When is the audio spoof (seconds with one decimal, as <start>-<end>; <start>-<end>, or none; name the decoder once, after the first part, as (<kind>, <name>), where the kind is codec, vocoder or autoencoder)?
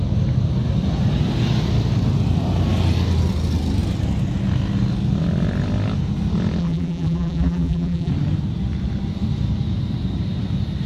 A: 6.6-8.1 (vocoder, BigVGAN v2)